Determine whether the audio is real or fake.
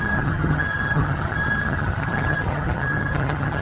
fake